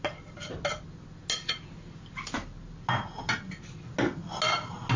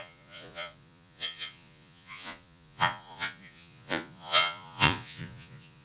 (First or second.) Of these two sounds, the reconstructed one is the second